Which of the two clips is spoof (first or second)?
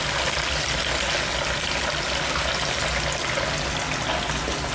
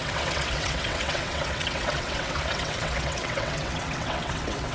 second